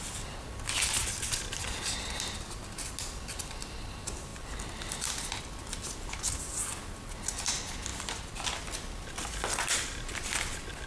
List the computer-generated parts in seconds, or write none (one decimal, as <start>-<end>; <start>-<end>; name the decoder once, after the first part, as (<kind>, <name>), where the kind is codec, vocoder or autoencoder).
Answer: none